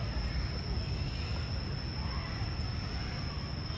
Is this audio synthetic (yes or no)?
no